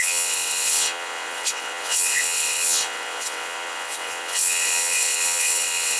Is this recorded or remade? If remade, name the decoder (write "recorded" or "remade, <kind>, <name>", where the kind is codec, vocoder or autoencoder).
remade, vocoder, WaveNeXt